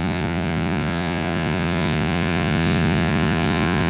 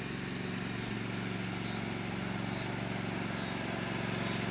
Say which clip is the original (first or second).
second